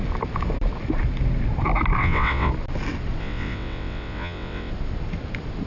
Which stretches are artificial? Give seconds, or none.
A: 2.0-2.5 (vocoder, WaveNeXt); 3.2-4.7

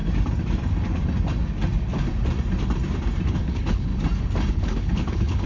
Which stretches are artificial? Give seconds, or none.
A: 3.3-3.9 (codec, HILCodec); 4.5-5.5

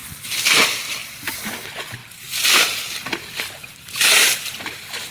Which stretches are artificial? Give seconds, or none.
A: none

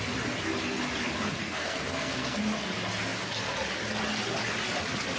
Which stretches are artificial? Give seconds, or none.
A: 1.4-2.4 (codec, SNAC)

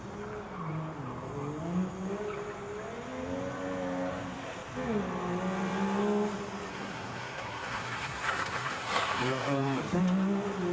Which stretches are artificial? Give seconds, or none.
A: 6.7-10.0 (codec, SNAC)